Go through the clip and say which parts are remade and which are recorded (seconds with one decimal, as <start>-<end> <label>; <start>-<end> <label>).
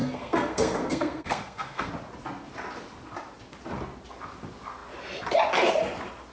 0.0-1.9 remade; 1.9-6.3 recorded